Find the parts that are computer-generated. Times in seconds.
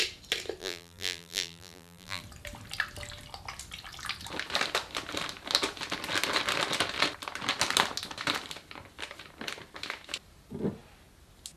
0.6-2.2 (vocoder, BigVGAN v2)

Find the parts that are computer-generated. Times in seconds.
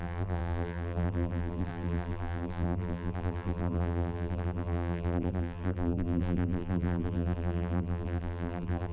0.0-8.9 (vocoder, BigVGAN v2)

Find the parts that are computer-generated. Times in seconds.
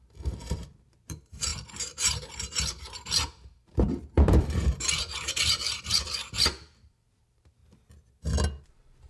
0.0-7.6 (vocoder, BigVGAN v2); 8.6-9.1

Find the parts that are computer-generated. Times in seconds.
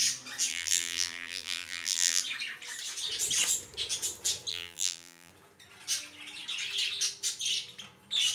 0.5-2.2 (vocoder, BigVGAN v2); 4.5-5.3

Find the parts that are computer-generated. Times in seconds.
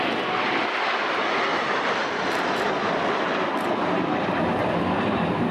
1.5-2.6 (vocoder, BigVGAN v2); 4.6-5.5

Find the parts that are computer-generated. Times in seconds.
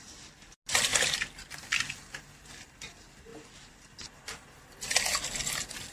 0.9-1.7 (vocoder, BigVGAN v2); 3.3-5.0